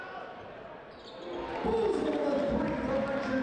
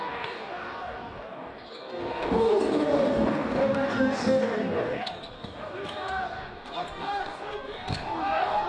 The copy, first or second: second